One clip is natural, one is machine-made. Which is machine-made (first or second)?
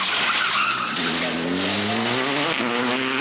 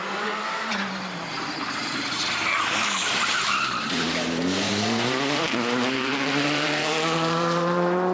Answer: second